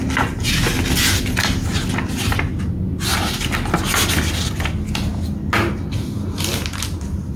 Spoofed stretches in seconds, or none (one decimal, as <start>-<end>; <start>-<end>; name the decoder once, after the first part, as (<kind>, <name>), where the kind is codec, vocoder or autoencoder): none